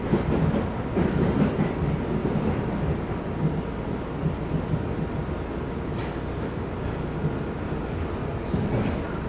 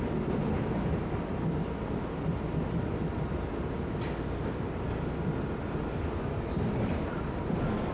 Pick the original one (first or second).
first